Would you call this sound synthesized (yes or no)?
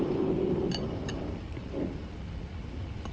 no